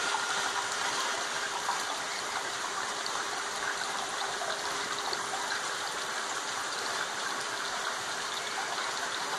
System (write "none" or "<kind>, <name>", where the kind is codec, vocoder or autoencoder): vocoder, BigVGAN v2